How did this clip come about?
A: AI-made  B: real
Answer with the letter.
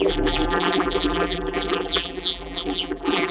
A